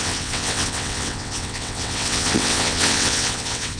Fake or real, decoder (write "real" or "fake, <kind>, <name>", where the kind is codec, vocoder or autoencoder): fake, vocoder, WaveNeXt